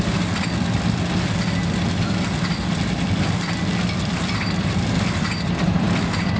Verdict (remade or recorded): recorded